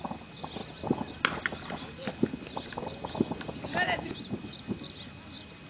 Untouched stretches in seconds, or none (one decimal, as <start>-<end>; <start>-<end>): 0.0-5.7